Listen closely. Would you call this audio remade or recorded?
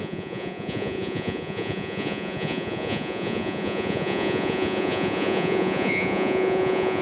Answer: remade